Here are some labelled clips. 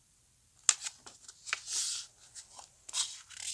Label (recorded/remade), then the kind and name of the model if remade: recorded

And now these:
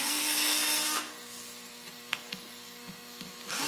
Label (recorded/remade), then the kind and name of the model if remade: remade, codec, SNAC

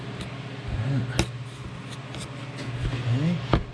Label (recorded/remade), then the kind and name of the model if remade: recorded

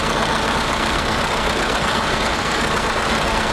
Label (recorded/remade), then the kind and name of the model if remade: remade, codec, SNAC